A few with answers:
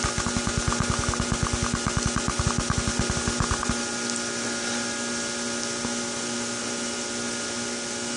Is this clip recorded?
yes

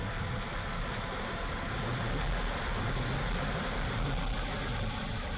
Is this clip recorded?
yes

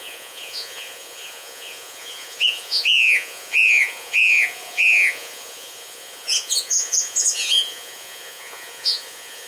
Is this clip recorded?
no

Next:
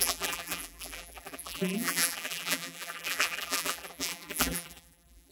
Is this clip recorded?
no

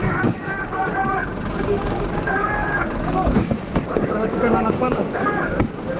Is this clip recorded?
no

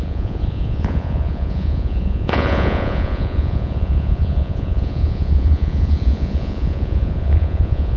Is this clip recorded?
no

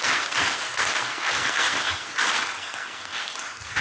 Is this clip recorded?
no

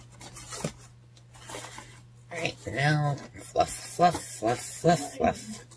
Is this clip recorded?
yes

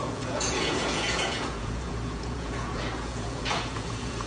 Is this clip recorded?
no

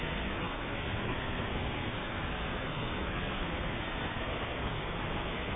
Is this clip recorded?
no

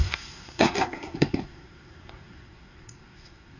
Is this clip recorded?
no